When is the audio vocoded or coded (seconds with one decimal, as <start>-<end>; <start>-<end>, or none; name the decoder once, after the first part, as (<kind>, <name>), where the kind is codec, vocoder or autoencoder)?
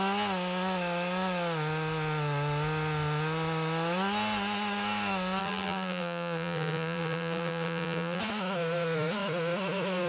5.4-8.2 (vocoder, BigVGAN v2)